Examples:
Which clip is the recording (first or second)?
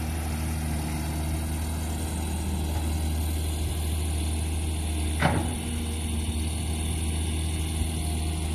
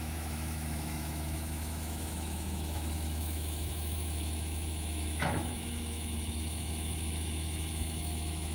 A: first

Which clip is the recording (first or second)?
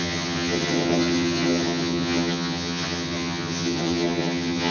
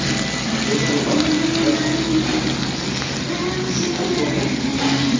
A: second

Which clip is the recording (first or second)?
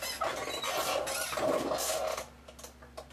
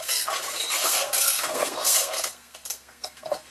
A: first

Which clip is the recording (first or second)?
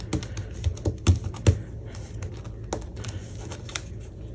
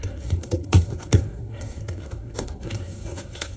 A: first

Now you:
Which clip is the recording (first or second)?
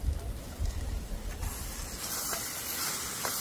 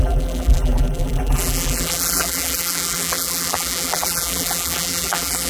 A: first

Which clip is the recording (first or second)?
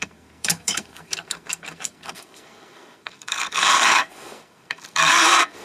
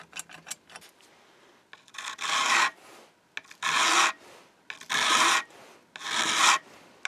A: second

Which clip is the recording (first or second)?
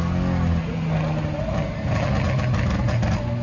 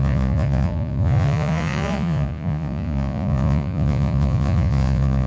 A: first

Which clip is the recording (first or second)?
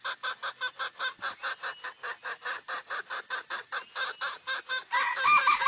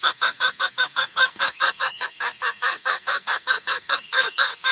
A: first